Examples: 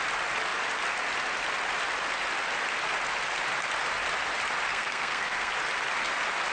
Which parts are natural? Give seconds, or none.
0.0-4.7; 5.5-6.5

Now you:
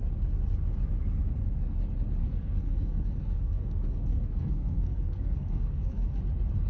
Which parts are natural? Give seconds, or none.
0.0-2.2; 6.2-6.7

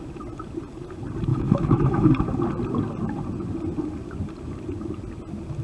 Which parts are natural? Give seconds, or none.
0.0-1.3; 2.1-5.6

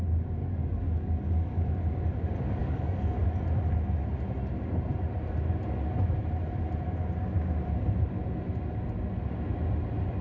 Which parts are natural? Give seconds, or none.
0.0-0.4; 1.6-2.6; 3.2-10.2